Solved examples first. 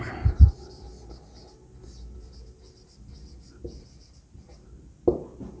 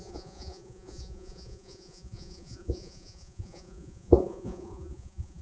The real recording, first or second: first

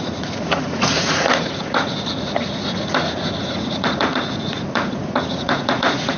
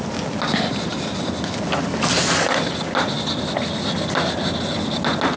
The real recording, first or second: second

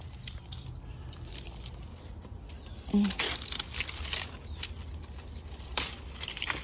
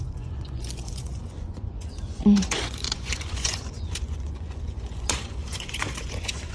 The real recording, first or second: first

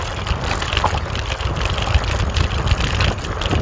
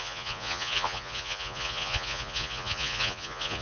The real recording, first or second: first